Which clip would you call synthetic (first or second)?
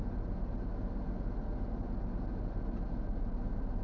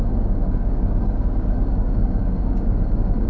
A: second